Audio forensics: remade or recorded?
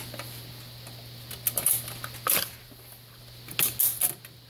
recorded